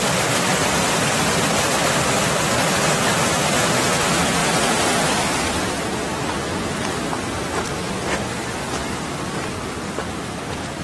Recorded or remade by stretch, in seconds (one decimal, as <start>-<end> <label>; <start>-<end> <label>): 0.0-10.8 recorded